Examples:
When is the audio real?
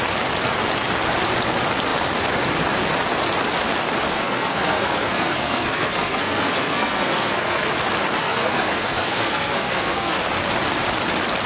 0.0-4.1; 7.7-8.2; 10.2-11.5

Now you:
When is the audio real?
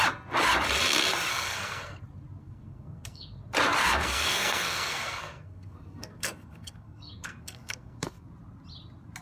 0.0-1.3; 2.0-2.4; 3.4-3.8; 8.3-9.2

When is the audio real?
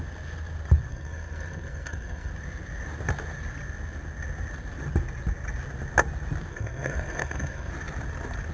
0.0-0.9; 2.3-6.5; 7.7-8.5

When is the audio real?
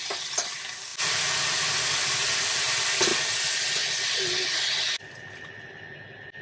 0.0-6.4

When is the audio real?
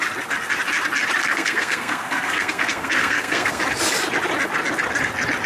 0.0-1.2; 3.6-5.5